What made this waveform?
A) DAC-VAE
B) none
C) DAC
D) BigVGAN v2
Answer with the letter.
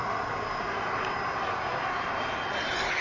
B